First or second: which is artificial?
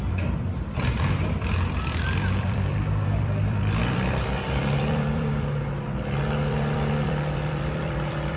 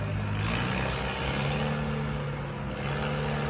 first